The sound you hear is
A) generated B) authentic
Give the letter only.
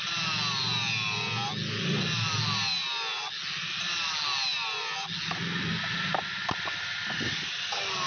B